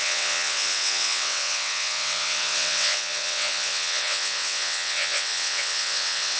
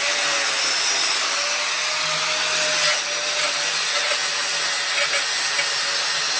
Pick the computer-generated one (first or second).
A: first